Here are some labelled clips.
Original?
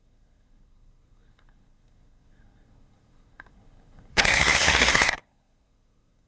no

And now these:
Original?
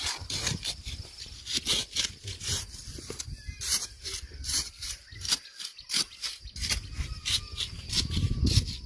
yes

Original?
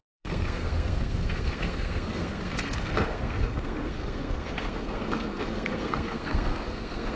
no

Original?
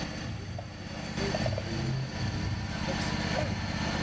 yes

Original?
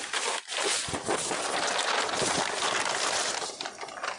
yes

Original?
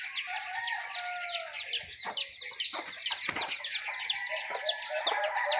yes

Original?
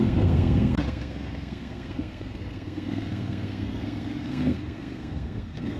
no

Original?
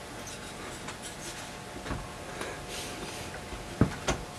yes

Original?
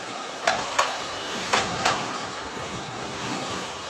no